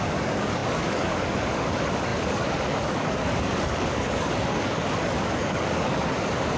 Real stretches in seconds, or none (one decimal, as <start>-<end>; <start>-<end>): none